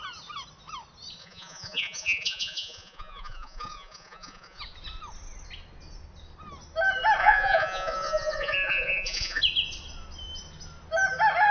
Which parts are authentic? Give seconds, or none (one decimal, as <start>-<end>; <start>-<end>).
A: 0.0-1.2; 4.6-7.2; 9.4-11.5